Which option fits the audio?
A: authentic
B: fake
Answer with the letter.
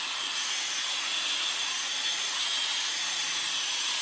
B